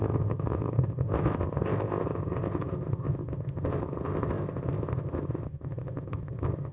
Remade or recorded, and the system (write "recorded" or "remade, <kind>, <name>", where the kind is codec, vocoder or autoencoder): remade, codec, ZipCodec